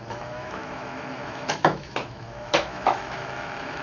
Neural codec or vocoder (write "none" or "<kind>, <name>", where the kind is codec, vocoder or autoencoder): autoencoder, DAC-VAE